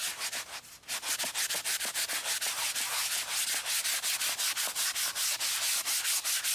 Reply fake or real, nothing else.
real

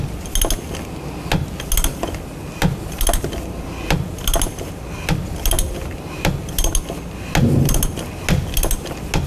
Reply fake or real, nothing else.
real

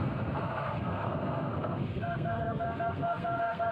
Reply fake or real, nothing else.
fake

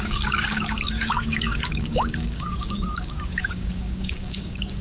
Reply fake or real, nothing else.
fake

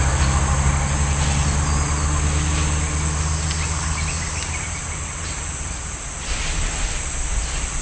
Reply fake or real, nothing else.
real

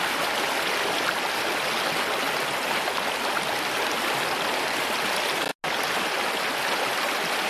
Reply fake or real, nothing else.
real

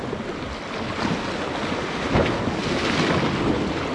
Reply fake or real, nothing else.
real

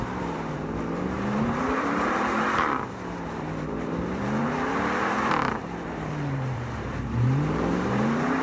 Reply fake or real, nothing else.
fake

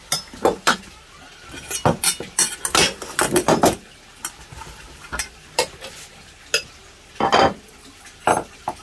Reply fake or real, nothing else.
real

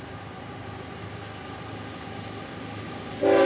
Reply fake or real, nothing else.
real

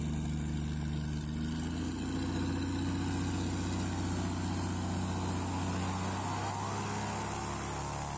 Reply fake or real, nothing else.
real